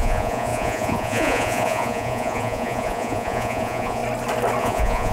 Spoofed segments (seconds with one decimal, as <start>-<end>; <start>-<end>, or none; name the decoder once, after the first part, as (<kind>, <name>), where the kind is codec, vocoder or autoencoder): 0.0-4.0 (vocoder, Vocos); 4.6-5.1